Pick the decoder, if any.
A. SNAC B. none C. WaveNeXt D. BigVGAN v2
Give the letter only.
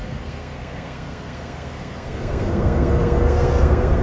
A